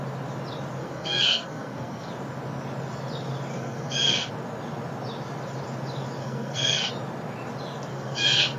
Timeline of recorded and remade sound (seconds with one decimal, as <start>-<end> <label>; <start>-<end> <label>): 0.0-0.8 recorded; 0.8-2.1 remade; 2.1-3.5 recorded; 3.5-4.3 remade; 4.3-6.2 recorded; 6.2-6.9 remade; 6.9-7.9 recorded; 7.9-8.6 remade